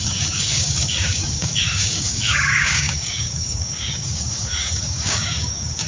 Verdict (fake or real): fake